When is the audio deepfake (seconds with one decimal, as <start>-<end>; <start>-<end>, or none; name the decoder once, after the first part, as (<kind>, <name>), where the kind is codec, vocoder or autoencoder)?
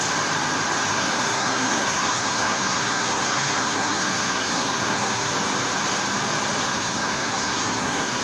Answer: 0.9-5.3 (codec, SNAC); 6.6-8.2